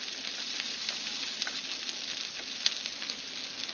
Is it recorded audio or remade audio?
recorded